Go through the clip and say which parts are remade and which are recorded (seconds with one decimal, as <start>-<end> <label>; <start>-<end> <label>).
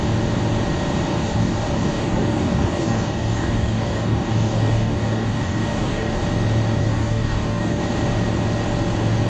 0.0-1.1 recorded; 1.1-6.2 remade; 6.2-6.8 recorded; 6.8-7.8 remade; 7.8-9.3 recorded